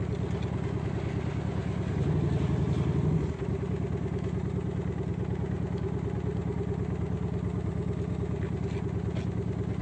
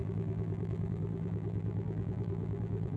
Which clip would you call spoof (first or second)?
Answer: second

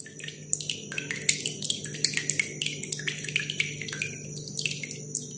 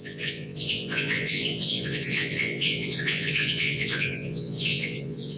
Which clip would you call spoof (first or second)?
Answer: second